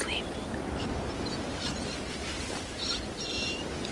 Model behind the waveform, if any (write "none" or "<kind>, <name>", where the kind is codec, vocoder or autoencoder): none